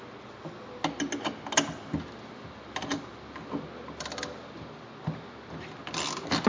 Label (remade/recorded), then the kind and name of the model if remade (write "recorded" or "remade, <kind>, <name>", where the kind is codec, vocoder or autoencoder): recorded